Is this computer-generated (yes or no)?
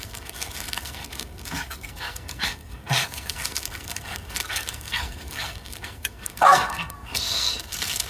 yes